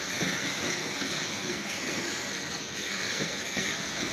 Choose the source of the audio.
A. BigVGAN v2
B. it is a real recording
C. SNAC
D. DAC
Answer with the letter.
C